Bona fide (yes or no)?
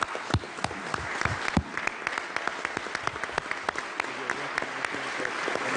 yes